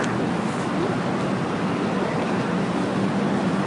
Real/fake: real